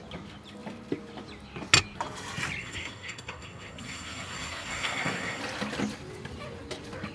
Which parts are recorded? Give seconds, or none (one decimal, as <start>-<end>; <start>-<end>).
0.0-2.6; 5.4-7.1